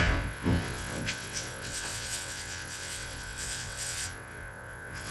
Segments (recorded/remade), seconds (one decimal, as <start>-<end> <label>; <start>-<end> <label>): 0.0-5.1 remade